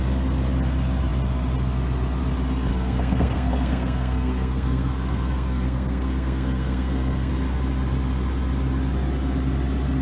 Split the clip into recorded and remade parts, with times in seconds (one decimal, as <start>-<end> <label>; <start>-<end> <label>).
0.0-2.7 recorded; 2.7-7.3 remade; 7.3-10.0 recorded